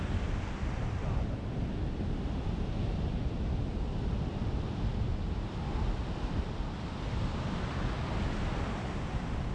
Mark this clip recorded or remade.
recorded